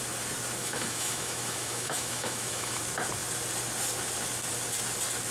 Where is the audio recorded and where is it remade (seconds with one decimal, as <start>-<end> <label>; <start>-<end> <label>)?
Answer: 0.0-0.6 recorded; 0.6-2.8 remade; 2.8-5.3 recorded